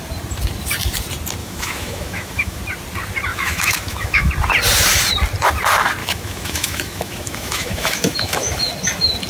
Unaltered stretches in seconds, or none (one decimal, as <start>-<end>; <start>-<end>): 0.0-1.4; 2.6-3.3; 4.3-6.0; 8.7-9.3